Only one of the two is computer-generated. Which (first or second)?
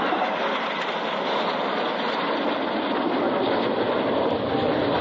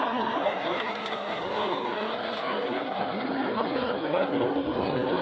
second